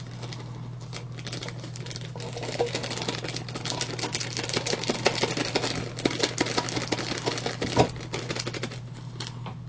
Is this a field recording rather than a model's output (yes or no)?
yes